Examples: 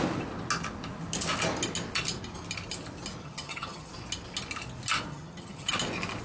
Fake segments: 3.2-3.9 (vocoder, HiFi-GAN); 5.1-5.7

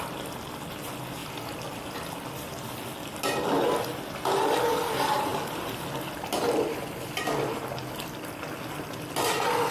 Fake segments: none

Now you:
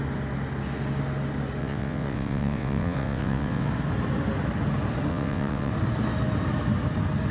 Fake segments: 1.6-3.7 (vocoder, WaveNeXt); 5.1-5.7